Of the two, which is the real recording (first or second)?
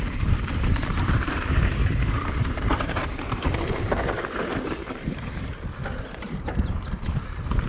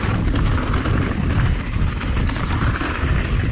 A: second